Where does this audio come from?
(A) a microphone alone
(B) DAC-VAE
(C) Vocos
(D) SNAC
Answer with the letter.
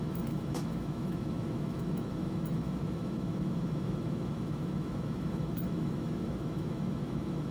B